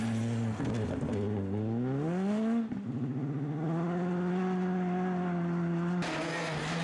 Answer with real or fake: real